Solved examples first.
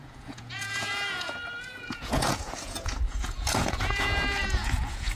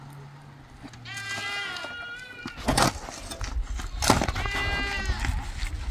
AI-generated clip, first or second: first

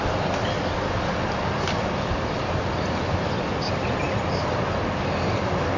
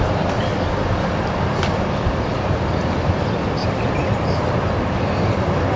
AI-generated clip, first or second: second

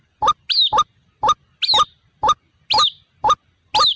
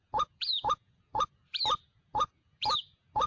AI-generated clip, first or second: second